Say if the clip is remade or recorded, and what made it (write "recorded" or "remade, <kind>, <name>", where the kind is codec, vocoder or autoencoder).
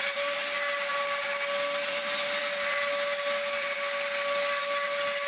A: recorded